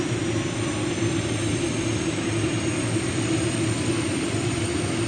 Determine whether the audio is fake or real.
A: real